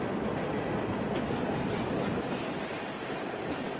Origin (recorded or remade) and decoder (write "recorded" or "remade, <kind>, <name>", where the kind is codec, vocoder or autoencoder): recorded